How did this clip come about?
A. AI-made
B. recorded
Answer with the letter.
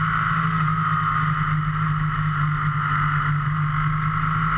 B